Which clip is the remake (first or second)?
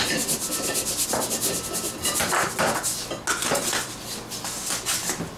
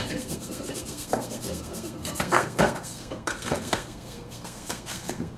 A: second